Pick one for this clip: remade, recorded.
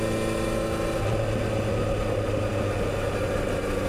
recorded